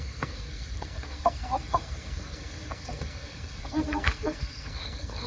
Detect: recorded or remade remade